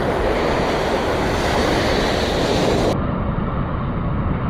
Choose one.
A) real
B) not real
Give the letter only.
A